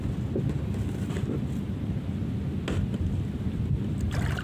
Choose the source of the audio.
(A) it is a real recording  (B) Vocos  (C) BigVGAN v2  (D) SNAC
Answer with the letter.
A